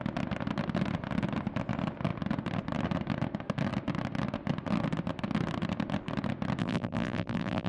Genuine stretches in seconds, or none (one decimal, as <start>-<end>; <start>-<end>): 0.0-6.6